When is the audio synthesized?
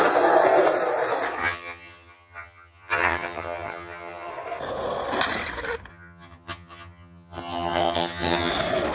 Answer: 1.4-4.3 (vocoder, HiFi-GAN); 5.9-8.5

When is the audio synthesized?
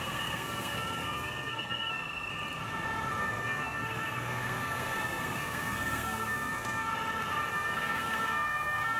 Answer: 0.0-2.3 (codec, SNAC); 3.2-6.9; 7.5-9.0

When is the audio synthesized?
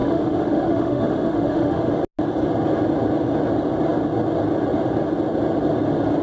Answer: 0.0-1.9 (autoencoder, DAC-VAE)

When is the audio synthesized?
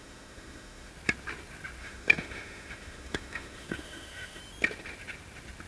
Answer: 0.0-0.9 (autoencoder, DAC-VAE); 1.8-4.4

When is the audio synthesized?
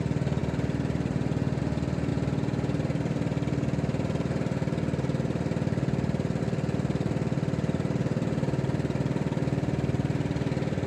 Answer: 0.4-1.6 (vocoder, BigVGAN v2)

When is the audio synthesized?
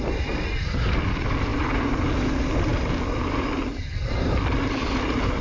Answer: none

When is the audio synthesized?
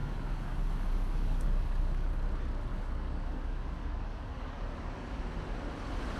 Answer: 0.0-2.1 (codec, DAC); 2.7-5.2